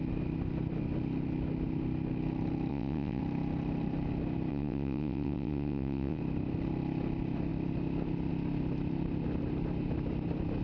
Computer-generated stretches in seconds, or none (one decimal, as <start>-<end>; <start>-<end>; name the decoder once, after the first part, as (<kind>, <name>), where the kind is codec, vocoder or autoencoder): 2.7-3.2 (vocoder, WaveNeXt); 4.5-6.2